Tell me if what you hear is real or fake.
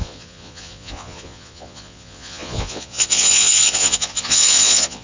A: fake